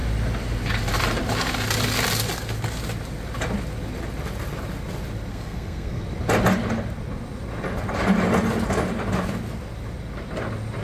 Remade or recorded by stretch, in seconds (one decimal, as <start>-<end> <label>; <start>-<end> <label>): 0.0-5.3 recorded; 5.3-6.0 remade; 6.0-10.8 recorded